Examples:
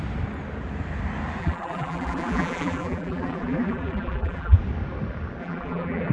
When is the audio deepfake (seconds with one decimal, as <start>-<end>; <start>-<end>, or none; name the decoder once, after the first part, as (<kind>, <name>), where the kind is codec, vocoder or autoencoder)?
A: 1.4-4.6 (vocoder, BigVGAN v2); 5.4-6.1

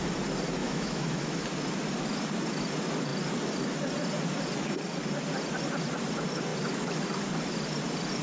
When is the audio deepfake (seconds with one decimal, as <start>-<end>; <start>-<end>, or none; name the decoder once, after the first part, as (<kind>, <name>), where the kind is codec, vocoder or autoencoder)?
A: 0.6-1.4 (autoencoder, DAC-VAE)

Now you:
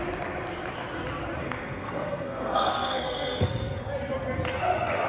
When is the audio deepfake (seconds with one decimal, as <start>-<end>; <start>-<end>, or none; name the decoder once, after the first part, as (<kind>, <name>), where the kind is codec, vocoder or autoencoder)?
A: 1.4-3.8 (codec, SNAC); 4.5-5.1